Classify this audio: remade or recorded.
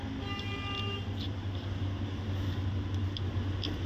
recorded